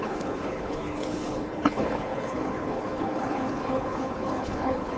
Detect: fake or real fake